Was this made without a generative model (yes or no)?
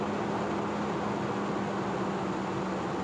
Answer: yes